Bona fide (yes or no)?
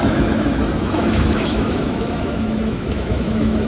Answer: no